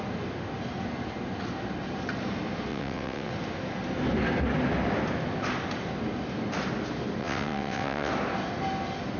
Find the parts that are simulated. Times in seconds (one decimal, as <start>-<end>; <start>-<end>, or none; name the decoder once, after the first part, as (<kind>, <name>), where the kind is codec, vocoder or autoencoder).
2.7-3.3 (vocoder, WaveNeXt); 7.2-8.1